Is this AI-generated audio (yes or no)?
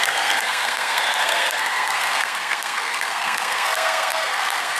yes